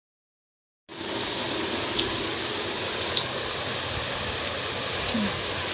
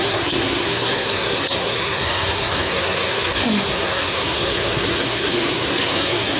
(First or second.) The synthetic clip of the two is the second